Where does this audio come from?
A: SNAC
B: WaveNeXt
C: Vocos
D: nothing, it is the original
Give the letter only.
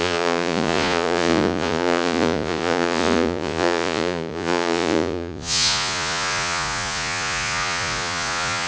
C